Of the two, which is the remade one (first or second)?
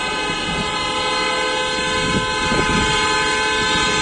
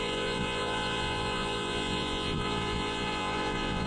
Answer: second